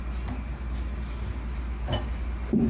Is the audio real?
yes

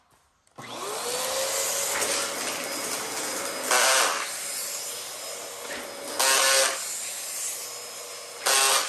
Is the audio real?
yes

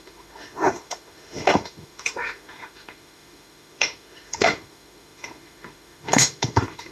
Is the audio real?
no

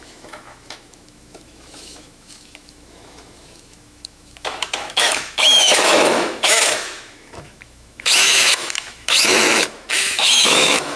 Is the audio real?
no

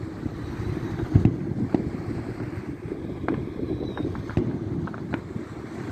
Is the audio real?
yes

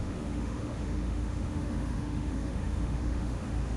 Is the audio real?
no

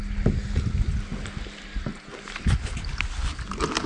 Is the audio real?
yes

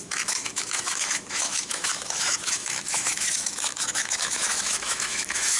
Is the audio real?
no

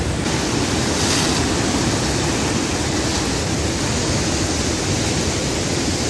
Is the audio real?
yes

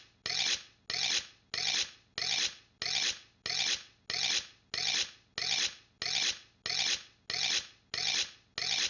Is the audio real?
yes